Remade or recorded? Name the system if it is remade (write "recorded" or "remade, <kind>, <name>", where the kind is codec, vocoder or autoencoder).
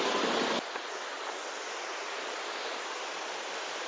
recorded